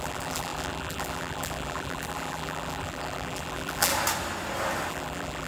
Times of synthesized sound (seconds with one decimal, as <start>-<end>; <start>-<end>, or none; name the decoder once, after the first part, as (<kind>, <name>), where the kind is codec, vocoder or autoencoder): 0.0-3.9 (vocoder, BigVGAN v2); 4.9-5.5